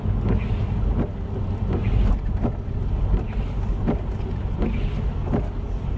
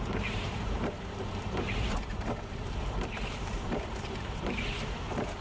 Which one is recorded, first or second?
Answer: first